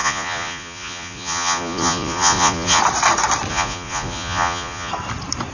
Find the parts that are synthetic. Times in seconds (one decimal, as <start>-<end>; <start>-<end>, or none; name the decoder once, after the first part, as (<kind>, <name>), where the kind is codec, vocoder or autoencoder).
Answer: 0.0-2.8 (vocoder, Vocos); 3.5-4.9